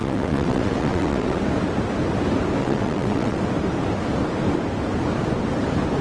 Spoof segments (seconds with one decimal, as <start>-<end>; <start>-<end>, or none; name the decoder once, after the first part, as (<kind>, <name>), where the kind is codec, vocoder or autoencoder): 0.0-1.4 (vocoder, WaveNeXt); 2.6-3.4